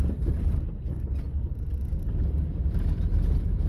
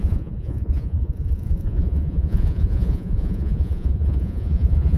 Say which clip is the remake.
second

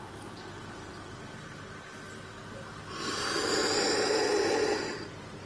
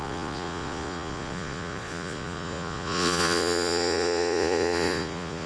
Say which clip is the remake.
second